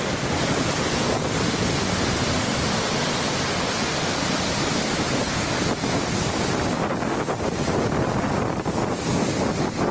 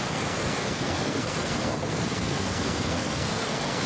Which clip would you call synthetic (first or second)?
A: second